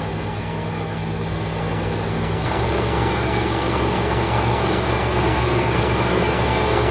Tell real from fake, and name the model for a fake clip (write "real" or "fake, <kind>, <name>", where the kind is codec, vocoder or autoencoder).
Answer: fake, codec, SNAC